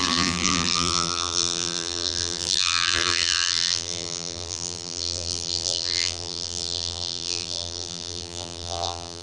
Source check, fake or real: fake